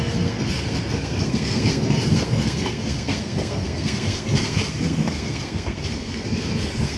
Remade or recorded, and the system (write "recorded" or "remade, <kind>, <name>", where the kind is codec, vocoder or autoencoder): remade, codec, SNAC